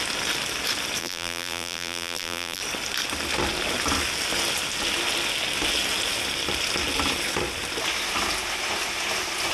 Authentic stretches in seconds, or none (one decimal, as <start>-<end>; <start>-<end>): 0.0-1.0; 2.6-9.5